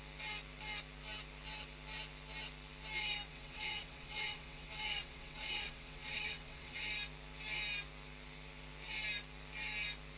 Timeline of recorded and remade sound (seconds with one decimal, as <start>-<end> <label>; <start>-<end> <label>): 0.0-3.3 recorded; 3.3-6.8 remade; 6.8-10.2 recorded